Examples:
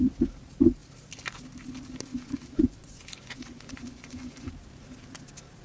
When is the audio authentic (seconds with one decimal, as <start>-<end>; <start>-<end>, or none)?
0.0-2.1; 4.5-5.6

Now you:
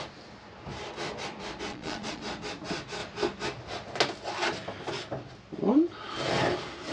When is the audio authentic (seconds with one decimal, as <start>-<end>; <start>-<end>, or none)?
0.0-1.7; 2.2-6.9

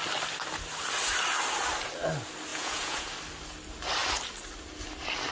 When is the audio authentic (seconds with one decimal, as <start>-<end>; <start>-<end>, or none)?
0.0-2.5; 3.1-5.3